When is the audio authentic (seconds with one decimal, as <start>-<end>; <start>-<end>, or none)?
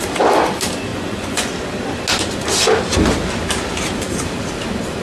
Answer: 0.0-0.9; 1.5-5.0